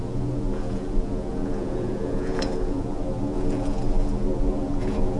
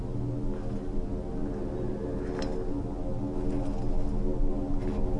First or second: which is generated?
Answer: first